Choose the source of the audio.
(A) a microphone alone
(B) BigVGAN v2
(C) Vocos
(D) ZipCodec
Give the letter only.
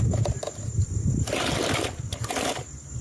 A